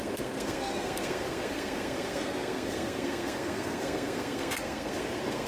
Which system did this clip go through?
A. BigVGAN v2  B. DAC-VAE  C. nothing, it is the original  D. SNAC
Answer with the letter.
D